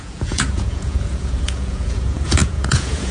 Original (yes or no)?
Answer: no